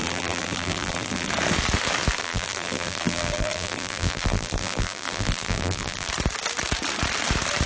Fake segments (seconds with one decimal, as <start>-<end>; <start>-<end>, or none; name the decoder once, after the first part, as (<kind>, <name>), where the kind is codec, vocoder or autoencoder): 0.0-1.3 (vocoder, BigVGAN v2); 2.2-6.1